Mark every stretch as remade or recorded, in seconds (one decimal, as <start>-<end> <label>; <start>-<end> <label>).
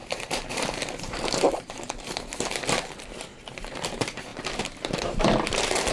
0.0-5.9 remade